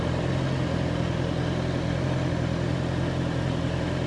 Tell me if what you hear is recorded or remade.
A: recorded